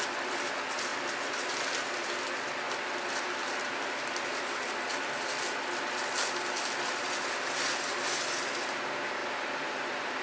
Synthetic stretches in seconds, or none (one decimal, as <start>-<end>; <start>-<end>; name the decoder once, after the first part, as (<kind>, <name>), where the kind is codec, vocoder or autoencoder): 9.2-10.2 (vocoder, BigVGAN v2)